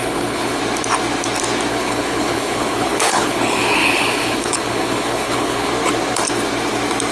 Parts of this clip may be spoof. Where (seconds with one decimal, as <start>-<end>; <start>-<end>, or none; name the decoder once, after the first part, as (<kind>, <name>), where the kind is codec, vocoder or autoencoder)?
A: 0.0-0.6 (codec, HILCodec); 1.7-5.7